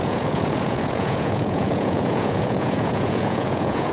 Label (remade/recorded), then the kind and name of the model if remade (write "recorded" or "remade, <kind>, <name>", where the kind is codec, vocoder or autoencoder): remade, vocoder, Vocos